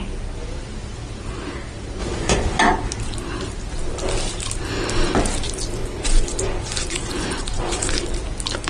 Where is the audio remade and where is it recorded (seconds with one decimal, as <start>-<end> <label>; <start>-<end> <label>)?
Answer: 0.0-2.0 recorded; 2.0-2.6 remade; 2.6-5.8 recorded; 5.8-7.9 remade; 7.9-8.7 recorded